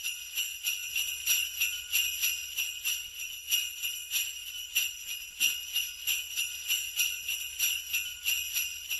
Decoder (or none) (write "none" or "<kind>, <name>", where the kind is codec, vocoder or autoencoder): none